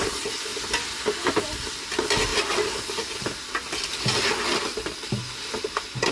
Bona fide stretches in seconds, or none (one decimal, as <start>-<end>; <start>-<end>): 0.0-6.1